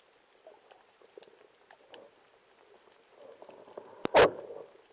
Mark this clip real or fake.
real